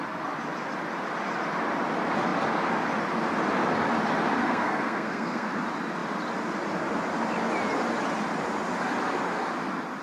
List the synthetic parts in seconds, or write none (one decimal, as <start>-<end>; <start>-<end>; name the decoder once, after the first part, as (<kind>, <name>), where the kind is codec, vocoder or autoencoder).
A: 4.4-5.6 (codec, SNAC)